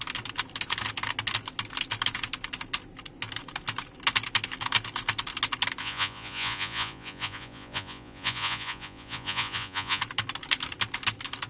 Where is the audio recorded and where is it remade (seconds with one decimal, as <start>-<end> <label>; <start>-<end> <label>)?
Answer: 0.0-5.8 recorded; 5.8-10.0 remade; 10.0-11.5 recorded